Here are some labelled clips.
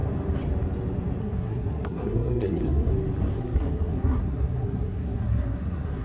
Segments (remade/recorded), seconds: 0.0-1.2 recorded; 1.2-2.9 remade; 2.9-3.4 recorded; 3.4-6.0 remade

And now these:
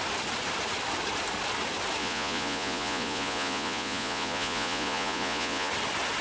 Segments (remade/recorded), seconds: 0.0-2.0 recorded; 2.0-5.7 remade; 5.7-6.2 recorded

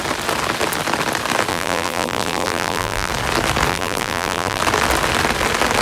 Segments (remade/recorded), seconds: 0.0-1.5 recorded; 1.5-3.1 remade; 3.1-3.7 recorded; 3.7-4.6 remade; 4.6-5.8 recorded

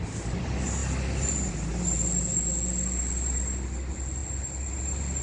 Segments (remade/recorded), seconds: 0.0-5.2 recorded

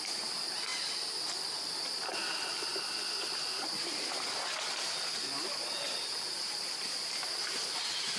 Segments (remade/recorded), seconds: 0.0-8.2 recorded

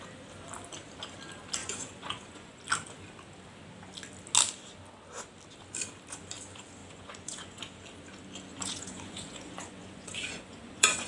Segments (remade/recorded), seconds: 0.0-1.6 recorded; 1.6-2.6 remade; 2.6-6.8 recorded; 6.8-7.6 remade; 7.6-8.5 recorded; 8.5-11.1 remade

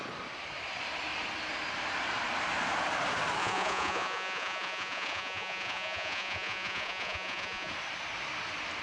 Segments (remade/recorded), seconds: 0.0-3.4 recorded; 3.4-7.7 remade; 7.7-8.8 recorded